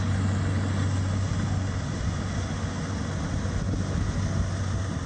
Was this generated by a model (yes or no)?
no